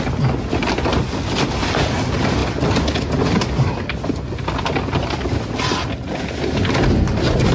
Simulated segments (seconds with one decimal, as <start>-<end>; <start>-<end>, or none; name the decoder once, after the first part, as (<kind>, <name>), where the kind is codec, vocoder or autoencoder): none